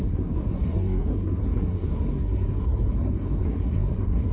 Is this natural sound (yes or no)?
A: no